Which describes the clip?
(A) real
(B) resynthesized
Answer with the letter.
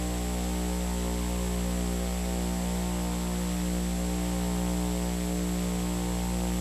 A